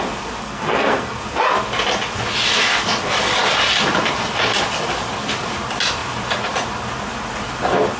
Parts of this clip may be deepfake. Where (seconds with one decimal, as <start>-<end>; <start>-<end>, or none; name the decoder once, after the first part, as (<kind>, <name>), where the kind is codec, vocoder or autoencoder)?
0.4-1.2 (codec, SNAC)